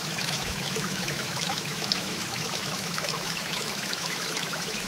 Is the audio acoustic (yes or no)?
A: no